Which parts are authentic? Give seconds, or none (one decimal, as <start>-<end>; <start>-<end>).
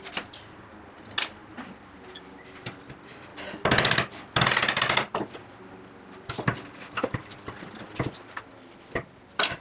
0.0-9.6